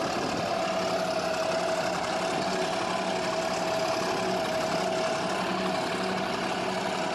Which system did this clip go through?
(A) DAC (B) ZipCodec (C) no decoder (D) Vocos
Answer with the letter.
C